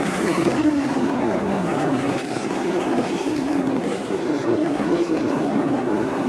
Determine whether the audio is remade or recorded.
remade